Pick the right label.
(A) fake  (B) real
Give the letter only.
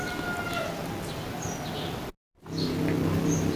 B